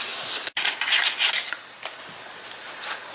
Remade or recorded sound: recorded